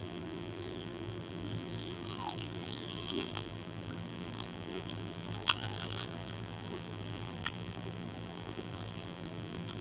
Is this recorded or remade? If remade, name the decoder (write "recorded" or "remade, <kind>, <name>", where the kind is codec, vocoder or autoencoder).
remade, vocoder, BigVGAN v2